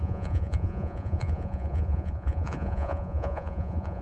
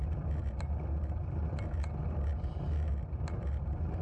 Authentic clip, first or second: second